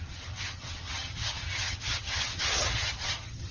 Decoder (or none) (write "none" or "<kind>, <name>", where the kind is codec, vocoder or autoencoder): vocoder, HiFi-GAN